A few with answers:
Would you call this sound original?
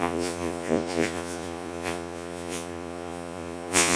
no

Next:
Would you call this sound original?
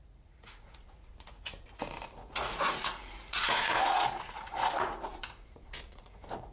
no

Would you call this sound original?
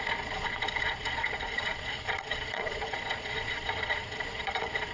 no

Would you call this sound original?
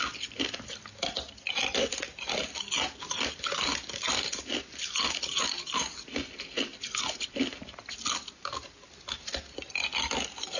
yes